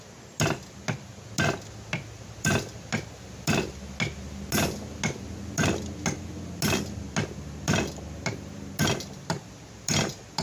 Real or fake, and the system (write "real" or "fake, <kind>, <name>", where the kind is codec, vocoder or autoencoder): real